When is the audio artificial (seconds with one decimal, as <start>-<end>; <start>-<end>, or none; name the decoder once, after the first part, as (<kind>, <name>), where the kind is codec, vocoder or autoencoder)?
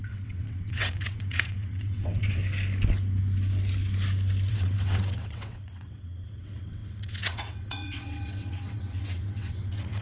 0.0-2.4 (vocoder, WaveNeXt); 4.5-10.0